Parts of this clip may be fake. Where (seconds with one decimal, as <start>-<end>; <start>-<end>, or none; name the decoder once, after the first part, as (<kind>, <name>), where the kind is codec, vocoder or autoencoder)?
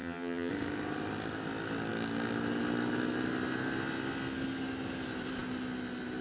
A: 0.0-0.5 (vocoder, HiFi-GAN)